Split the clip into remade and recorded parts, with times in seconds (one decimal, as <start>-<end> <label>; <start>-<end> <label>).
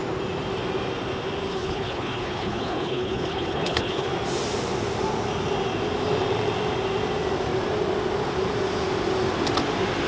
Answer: 0.0-1.5 recorded; 1.5-4.1 remade; 4.1-10.1 recorded